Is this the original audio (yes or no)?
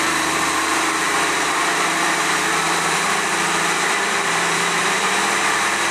no